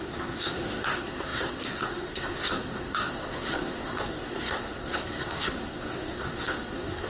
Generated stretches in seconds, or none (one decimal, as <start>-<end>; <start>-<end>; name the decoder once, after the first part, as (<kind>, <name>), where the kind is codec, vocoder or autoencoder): 0.0-7.1 (codec, SNAC)